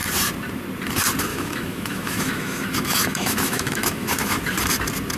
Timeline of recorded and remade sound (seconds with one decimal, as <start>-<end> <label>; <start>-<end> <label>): 0.0-1.3 recorded; 1.3-4.4 remade; 4.4-5.2 recorded